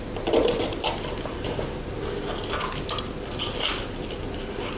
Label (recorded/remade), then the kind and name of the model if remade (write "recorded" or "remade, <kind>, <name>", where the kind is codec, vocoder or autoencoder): recorded